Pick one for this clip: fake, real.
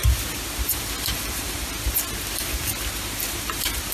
real